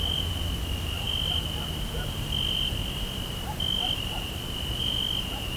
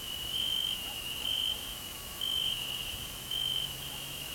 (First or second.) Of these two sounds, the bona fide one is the first